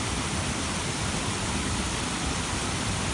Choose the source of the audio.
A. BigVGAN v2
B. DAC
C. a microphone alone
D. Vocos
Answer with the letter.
A